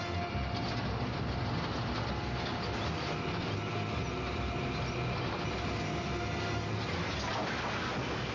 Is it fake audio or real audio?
real